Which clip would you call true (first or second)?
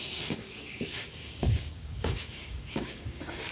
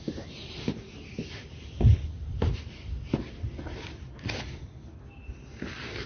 second